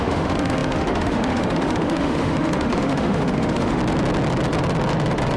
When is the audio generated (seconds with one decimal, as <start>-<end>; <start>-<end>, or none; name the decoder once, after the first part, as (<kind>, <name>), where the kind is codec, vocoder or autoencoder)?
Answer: 0.0-3.8 (autoencoder, DAC-VAE)